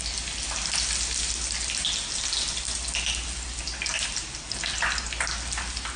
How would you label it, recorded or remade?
recorded